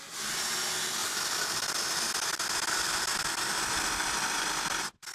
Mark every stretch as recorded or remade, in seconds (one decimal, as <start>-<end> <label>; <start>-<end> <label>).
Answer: 0.0-5.1 recorded